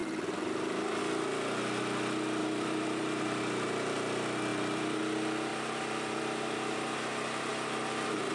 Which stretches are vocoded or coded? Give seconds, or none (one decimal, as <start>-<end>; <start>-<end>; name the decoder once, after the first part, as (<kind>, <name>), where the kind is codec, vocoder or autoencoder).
2.4-3.4 (vocoder, BigVGAN v2); 4.5-5.0; 5.5-8.3